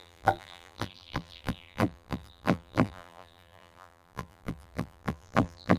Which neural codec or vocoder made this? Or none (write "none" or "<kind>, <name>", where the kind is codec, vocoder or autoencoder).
vocoder, BigVGAN v2